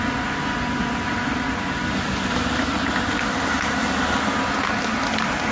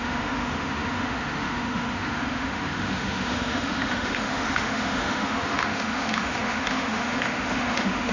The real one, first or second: first